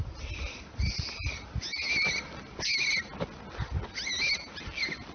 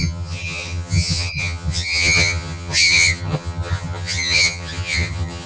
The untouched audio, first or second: first